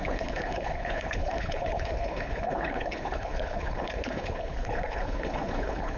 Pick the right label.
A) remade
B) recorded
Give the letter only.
A